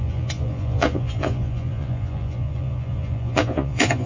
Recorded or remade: remade